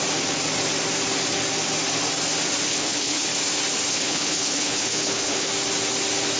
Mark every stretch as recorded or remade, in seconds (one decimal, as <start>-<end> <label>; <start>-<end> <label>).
0.0-2.7 recorded; 2.7-3.3 remade; 3.3-3.9 recorded; 3.9-5.5 remade; 5.5-6.4 recorded